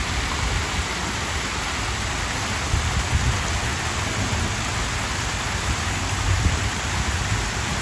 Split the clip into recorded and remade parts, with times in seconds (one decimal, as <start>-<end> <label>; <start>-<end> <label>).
0.0-7.8 recorded